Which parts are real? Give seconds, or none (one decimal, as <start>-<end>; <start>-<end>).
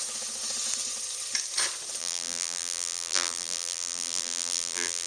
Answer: 0.0-2.0